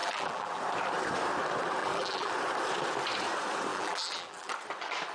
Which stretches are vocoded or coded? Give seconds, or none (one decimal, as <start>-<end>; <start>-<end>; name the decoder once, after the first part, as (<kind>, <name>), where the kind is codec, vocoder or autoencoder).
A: 0.0-0.6 (vocoder, BigVGAN v2); 1.8-2.3; 3.7-4.5